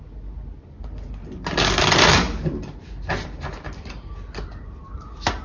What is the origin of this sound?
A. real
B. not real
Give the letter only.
A